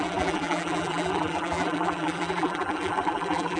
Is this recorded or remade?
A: remade